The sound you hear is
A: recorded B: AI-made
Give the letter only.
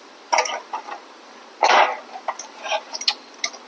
A